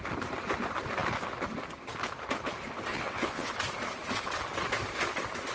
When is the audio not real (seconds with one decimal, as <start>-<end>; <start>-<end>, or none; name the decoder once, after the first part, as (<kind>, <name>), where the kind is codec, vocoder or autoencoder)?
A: 2.9-3.5 (vocoder, WaveNeXt)

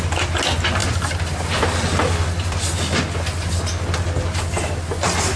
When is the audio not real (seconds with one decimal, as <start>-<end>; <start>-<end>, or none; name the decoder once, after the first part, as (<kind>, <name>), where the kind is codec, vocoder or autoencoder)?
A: none

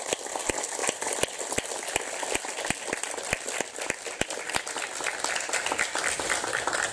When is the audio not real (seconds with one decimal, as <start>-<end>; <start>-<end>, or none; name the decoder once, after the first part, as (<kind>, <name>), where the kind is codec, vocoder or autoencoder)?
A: none

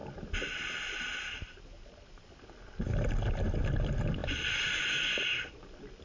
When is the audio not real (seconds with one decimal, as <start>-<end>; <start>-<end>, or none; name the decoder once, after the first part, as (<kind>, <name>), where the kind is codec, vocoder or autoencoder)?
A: none

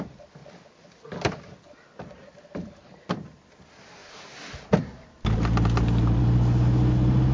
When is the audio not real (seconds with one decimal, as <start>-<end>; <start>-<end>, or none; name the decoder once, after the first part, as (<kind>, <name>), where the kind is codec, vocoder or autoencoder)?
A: none

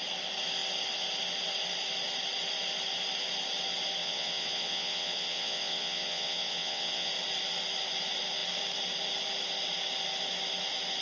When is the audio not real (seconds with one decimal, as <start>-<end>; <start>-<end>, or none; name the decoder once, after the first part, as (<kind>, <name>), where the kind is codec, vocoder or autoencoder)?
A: 4.0-7.1 (vocoder, WaveNeXt)

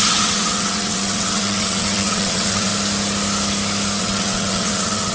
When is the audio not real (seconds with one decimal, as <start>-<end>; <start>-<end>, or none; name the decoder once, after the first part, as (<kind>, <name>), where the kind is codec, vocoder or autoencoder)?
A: 0.0-2.7 (vocoder, WaveNeXt); 4.0-5.1

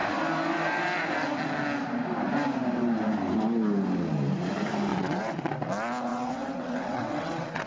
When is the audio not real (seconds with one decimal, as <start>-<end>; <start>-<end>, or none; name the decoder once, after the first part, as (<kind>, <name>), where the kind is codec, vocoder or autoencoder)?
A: 4.9-5.5 (vocoder, WaveNeXt); 6.1-7.7